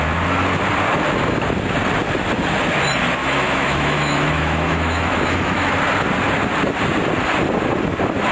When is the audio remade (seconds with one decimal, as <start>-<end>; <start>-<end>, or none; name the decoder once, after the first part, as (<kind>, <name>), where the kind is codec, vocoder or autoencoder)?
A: 3.2-5.7 (autoencoder, DAC-VAE)